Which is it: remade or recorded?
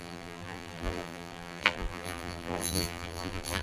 remade